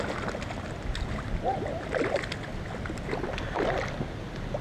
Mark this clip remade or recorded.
recorded